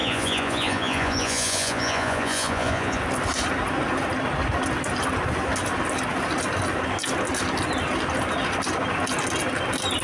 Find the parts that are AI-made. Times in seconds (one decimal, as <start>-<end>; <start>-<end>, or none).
0.0-3.0